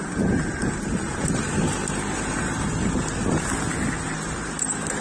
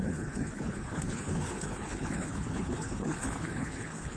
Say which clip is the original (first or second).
first